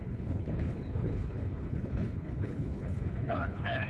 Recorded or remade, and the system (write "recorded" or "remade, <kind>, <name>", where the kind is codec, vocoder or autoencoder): remade, codec, HILCodec